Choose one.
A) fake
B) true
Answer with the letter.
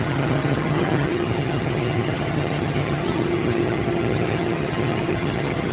A